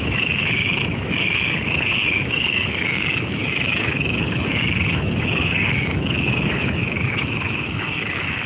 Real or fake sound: fake